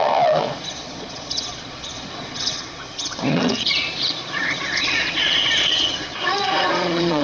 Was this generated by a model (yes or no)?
yes